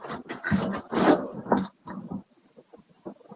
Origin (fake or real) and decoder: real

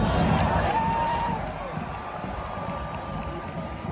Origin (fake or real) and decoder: real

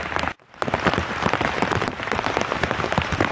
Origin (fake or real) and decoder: fake, vocoder, BigVGAN v2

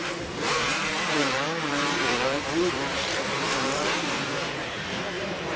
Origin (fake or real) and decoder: fake, vocoder, BigVGAN v2